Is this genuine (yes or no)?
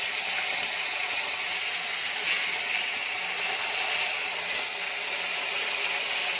yes